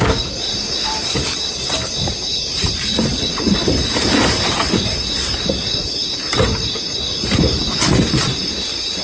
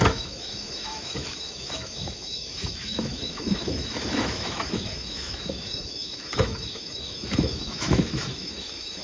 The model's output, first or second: second